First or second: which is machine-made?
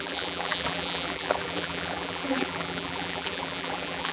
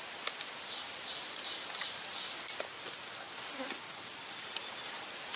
first